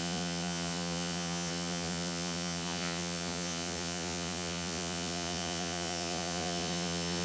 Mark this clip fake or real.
fake